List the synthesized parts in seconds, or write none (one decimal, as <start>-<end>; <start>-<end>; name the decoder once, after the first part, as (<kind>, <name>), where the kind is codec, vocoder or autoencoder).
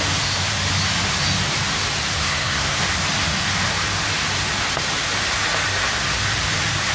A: 2.2-2.8 (codec, SNAC)